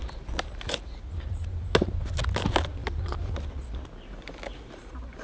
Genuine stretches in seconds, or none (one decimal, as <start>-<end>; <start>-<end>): 0.0-5.2